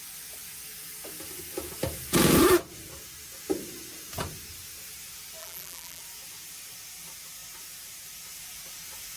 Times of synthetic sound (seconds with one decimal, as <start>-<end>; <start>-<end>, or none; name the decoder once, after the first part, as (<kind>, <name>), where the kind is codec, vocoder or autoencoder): 5.4-6.0 (vocoder, BigVGAN v2)